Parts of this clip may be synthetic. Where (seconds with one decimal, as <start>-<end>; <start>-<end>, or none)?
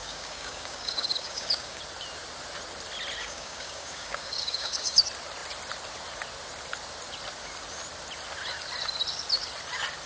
0.0-1.8; 3.2-5.0